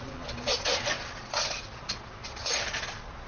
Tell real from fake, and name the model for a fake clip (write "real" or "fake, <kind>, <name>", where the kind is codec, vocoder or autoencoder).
fake, vocoder, Vocos